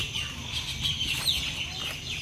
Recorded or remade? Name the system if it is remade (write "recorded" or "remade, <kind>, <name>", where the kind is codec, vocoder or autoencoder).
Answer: recorded